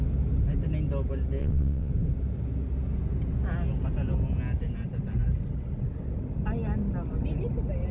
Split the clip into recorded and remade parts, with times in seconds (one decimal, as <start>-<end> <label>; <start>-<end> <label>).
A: 0.0-1.4 recorded; 1.4-1.9 remade; 1.9-7.9 recorded